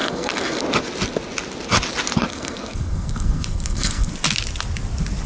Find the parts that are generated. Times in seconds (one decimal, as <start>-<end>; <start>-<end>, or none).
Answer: 0.0-0.6; 2.3-4.1

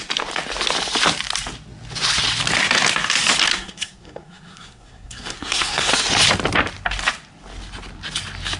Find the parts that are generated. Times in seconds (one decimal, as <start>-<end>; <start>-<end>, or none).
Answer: 3.5-5.9

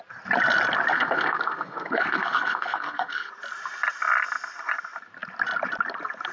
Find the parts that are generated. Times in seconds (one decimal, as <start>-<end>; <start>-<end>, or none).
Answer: 0.9-3.3

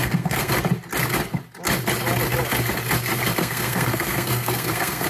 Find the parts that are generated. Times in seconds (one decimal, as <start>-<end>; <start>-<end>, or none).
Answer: 0.0-0.5; 3.4-5.1

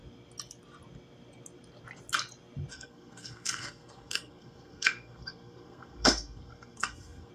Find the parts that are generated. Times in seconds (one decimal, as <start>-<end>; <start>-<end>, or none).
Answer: 2.7-7.3

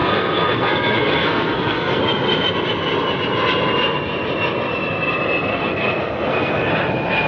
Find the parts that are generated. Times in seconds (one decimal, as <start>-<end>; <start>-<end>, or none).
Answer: 0.0-2.0; 5.5-6.7